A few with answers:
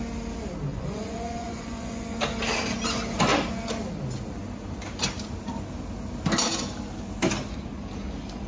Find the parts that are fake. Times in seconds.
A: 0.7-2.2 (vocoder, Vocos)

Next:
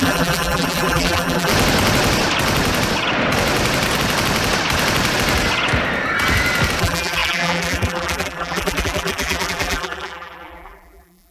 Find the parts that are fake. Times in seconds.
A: 0.0-1.5 (vocoder, BigVGAN v2); 6.8-11.3

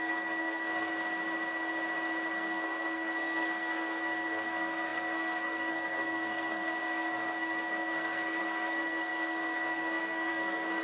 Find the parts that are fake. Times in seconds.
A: 0.0-0.9 (codec, SNAC); 2.3-10.8